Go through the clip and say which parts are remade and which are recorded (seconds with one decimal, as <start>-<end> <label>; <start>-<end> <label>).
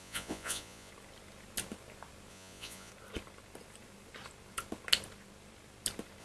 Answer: 0.0-0.9 remade; 0.9-2.3 recorded; 2.3-2.9 remade; 2.9-6.2 recorded